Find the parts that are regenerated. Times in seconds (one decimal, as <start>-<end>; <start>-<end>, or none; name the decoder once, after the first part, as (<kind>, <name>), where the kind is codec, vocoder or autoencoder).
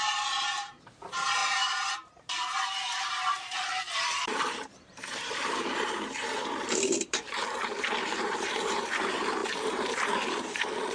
0.0-10.9 (vocoder, BigVGAN v2)